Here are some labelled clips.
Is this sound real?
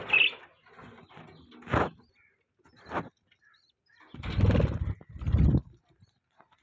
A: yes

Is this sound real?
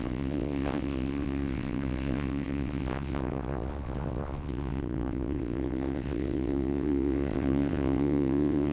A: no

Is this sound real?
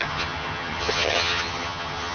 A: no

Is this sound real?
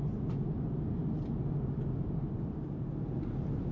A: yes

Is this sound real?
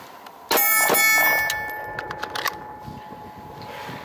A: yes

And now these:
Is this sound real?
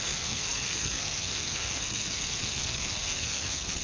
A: no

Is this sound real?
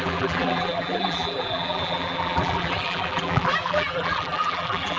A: no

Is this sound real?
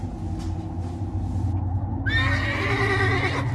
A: yes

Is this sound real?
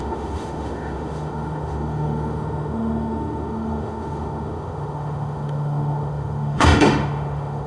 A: no